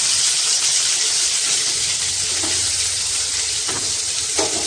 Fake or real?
real